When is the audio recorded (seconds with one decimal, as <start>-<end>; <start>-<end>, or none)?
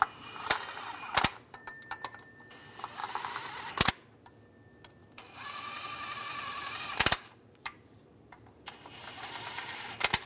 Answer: 0.0-3.0; 3.9-5.0; 8.2-10.3